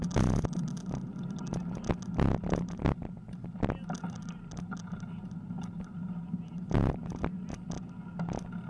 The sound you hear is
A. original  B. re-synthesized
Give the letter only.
A